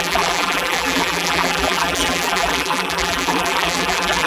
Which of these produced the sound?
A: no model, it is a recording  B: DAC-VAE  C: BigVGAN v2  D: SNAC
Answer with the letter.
C